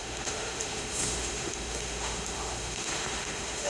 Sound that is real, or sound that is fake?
fake